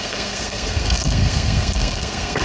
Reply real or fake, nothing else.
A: fake